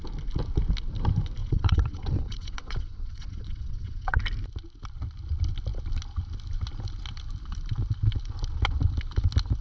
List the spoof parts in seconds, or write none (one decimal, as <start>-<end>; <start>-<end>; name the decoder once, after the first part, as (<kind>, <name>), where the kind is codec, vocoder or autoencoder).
1.4-4.2 (vocoder, WaveNeXt)